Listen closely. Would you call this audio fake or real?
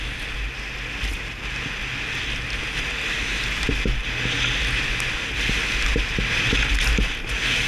real